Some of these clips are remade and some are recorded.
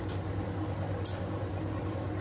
recorded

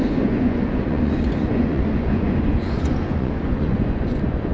remade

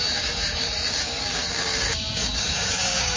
remade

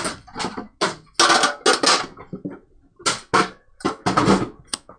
recorded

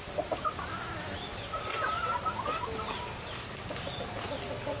recorded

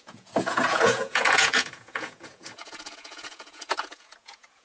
remade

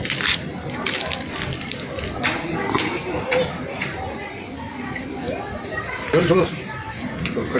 remade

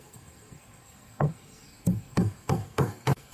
remade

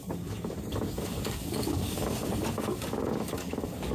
remade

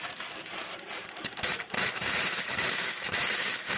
remade